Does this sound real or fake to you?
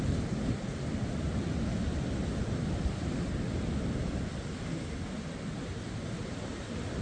real